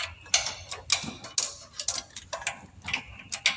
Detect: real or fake real